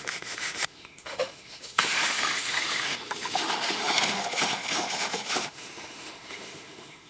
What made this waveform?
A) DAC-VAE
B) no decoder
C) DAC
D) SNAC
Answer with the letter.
A